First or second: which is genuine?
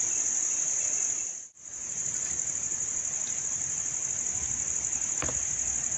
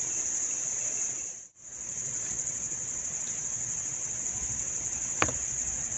first